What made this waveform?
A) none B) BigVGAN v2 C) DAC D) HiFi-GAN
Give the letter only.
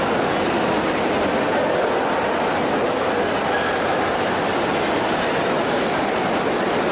A